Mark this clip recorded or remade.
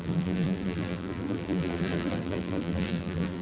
remade